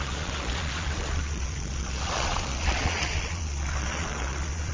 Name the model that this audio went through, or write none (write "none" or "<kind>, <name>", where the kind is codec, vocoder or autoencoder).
vocoder, Vocos